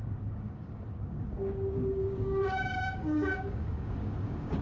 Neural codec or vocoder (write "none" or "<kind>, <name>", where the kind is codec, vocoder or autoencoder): codec, DAC